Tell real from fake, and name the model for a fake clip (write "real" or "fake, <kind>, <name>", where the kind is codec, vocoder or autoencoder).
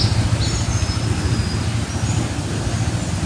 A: real